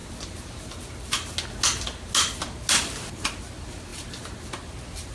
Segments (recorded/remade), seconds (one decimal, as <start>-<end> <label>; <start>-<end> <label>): 0.0-5.1 recorded